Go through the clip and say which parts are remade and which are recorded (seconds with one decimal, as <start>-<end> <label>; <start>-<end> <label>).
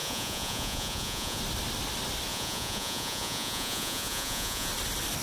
0.0-1.4 remade; 1.4-2.3 recorded; 2.3-4.7 remade; 4.7-5.2 recorded